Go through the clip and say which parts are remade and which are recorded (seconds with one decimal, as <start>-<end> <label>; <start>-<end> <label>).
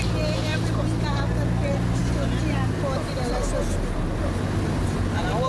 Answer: 0.0-5.5 recorded